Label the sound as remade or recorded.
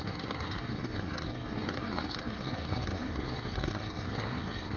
remade